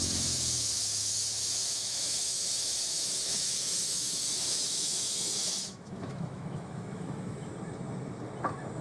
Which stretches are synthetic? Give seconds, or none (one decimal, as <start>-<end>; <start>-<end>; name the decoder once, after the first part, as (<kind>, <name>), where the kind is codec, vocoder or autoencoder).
0.0-7.5 (autoencoder, DAC-VAE)